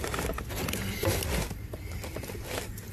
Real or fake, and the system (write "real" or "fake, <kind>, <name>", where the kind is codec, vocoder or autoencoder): real